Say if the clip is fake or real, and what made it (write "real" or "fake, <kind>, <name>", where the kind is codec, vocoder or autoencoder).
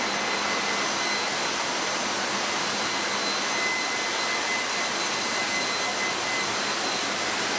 real